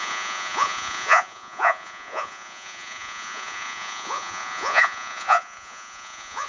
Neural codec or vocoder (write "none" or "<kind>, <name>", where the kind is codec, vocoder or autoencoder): vocoder, Vocos